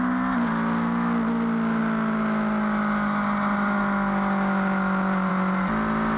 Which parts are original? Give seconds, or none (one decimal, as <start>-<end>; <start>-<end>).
0.0-6.2